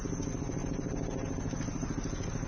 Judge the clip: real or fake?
real